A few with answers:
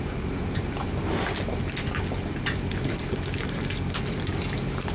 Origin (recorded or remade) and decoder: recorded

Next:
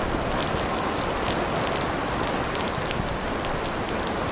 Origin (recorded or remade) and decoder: recorded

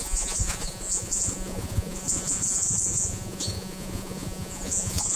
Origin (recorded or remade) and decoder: remade, vocoder, Vocos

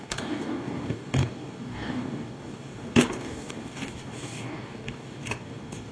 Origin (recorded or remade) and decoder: remade, codec, DAC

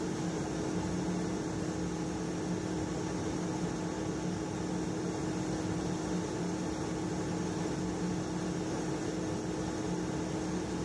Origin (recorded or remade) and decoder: recorded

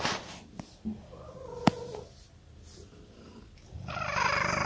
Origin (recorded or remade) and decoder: recorded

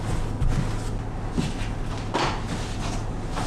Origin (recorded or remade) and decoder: recorded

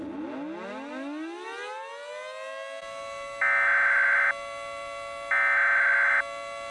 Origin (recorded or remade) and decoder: recorded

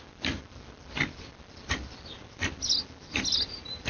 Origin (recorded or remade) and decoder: recorded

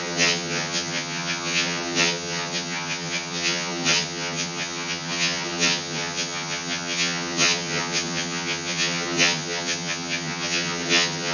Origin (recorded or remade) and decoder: remade, vocoder, HiFi-GAN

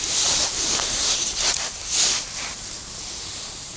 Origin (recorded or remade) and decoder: recorded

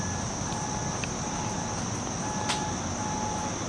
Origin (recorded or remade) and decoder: recorded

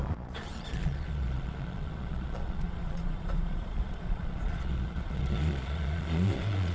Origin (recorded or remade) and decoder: remade, vocoder, Vocos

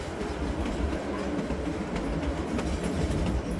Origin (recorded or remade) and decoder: recorded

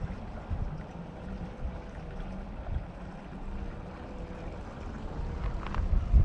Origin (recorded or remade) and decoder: recorded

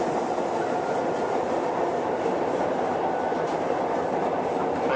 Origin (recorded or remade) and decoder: recorded